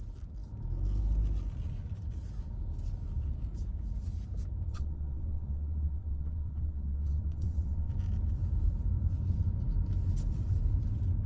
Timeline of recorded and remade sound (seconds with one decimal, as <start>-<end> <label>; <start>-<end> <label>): 0.0-4.7 recorded; 4.7-7.9 remade; 7.9-11.3 recorded